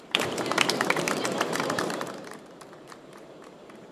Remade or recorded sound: remade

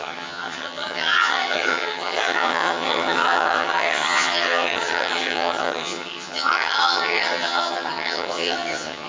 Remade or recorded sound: remade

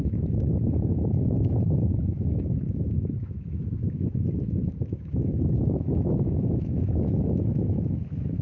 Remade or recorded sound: remade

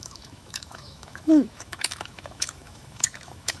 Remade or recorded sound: remade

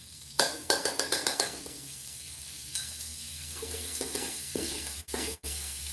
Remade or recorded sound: remade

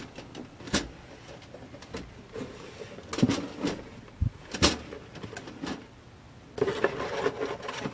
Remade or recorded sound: recorded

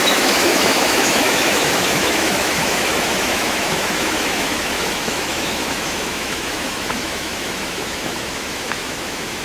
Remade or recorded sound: remade